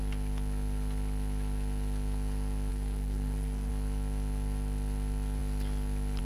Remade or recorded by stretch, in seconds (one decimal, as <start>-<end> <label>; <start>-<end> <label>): 0.0-2.7 recorded; 2.7-3.7 remade; 3.7-6.2 recorded